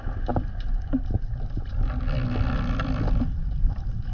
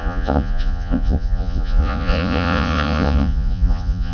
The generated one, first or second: second